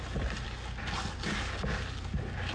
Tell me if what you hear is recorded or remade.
recorded